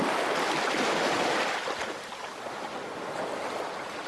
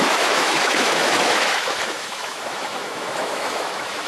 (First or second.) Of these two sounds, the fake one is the second